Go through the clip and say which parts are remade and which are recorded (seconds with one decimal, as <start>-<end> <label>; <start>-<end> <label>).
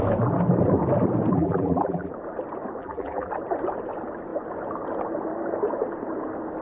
0.0-1.3 recorded; 1.3-2.1 remade; 2.1-2.8 recorded; 2.8-3.3 remade; 3.3-6.6 recorded